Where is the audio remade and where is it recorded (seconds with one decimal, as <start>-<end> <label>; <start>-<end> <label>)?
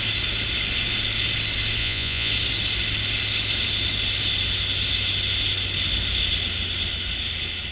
0.0-1.8 recorded; 1.8-2.3 remade; 2.3-7.7 recorded